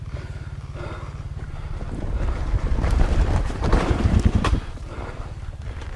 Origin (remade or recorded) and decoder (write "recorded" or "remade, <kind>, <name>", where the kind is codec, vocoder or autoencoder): remade, vocoder, BigVGAN v2